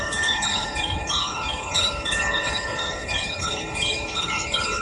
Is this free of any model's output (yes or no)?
no